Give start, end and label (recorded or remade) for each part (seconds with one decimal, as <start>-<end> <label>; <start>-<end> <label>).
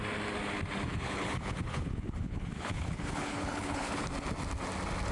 0.0-0.9 recorded; 0.9-4.0 remade; 4.0-5.1 recorded